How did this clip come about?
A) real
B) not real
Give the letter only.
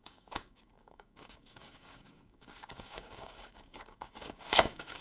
B